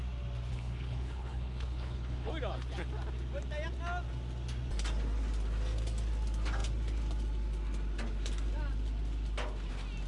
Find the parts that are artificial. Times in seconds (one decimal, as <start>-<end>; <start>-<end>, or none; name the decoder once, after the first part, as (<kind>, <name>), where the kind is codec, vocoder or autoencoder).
0.5-2.3 (codec, HILCodec)